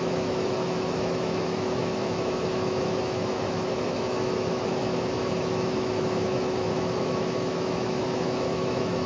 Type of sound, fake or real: fake